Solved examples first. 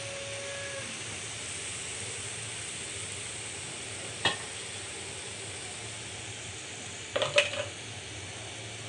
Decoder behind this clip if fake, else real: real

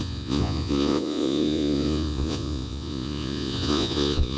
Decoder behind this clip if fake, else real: fake, vocoder, Vocos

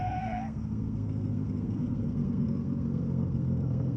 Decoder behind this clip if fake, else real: fake, codec, SNAC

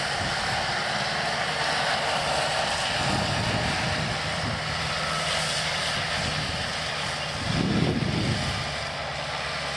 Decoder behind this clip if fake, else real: real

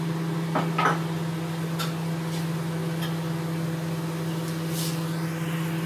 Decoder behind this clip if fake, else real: real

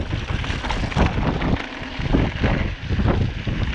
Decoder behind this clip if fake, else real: real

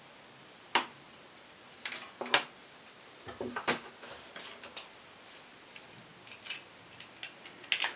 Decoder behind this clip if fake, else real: real